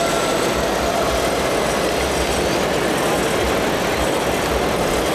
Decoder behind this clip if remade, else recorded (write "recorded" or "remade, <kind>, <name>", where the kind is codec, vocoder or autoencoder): recorded